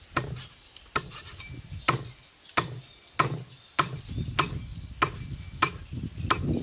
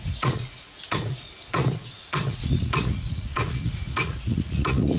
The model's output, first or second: second